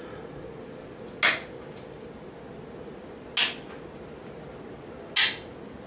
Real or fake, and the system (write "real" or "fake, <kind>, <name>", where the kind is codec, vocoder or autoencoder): real